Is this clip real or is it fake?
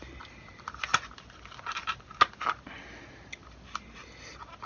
real